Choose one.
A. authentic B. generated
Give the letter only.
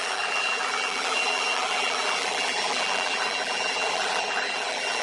B